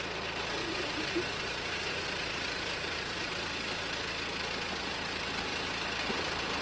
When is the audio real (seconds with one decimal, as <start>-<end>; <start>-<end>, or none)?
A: 0.0-0.6; 3.3-6.6